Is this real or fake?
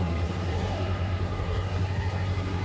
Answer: fake